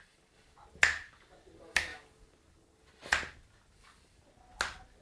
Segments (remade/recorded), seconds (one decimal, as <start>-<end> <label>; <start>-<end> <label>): 0.0-5.0 recorded